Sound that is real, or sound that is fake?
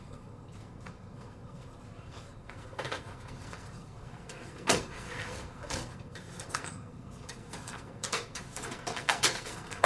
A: fake